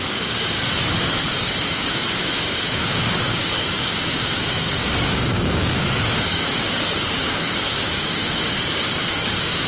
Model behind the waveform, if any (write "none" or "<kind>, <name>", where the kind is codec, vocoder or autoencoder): codec, DAC